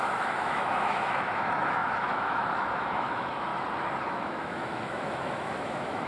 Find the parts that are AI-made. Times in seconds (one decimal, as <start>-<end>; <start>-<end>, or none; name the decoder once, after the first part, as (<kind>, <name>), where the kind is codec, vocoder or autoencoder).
0.0-3.5 (autoencoder, DAC-VAE); 4.1-6.1

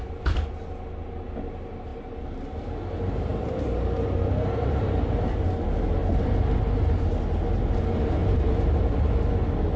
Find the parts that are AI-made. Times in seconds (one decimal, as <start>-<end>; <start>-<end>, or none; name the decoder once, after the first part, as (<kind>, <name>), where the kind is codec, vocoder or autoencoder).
3.3-5.5 (vocoder, BigVGAN v2); 8.2-8.8

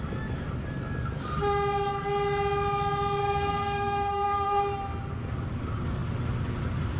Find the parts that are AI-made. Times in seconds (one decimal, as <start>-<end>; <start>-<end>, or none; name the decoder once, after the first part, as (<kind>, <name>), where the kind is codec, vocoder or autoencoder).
3.2-4.6 (codec, SNAC)

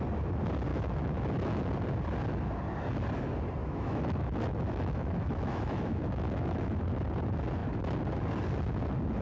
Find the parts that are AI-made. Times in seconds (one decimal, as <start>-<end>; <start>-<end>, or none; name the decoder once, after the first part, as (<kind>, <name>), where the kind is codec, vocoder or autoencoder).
0.7-1.7 (autoencoder, DAC-VAE); 3.6-6.8

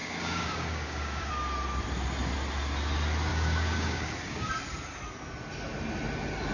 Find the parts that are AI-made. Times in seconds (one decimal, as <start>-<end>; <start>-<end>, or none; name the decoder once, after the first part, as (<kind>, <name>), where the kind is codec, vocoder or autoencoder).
0.0-1.3 (codec, DAC); 3.3-4.5

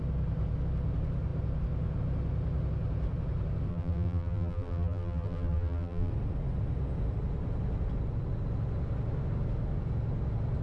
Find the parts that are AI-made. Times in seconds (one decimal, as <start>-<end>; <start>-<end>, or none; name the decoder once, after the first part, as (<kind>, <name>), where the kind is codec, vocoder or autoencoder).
3.7-6.1 (vocoder, BigVGAN v2)